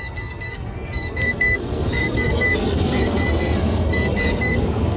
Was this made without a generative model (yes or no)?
no